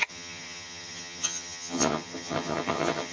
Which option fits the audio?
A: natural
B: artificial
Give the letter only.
B